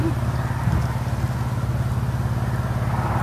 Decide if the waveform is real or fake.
real